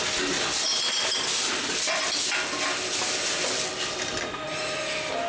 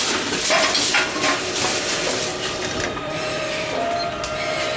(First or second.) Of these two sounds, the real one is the first